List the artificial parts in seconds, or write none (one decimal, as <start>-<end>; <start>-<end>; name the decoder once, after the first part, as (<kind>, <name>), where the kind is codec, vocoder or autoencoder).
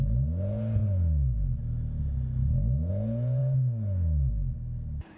none